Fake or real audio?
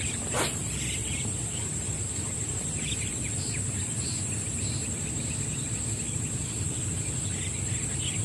real